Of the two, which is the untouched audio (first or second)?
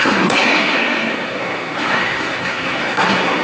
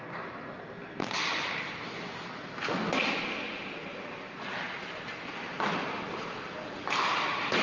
second